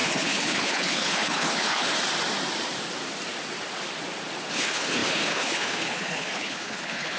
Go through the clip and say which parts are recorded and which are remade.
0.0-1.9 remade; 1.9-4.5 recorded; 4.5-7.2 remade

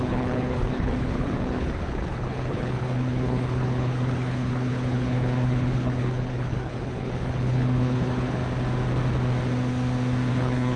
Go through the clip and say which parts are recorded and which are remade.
0.0-8.4 remade; 8.4-10.3 recorded; 10.3-10.8 remade

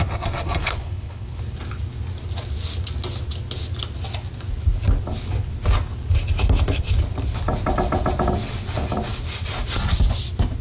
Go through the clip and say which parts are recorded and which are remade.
0.0-0.6 recorded; 0.6-1.4 remade; 1.4-10.6 recorded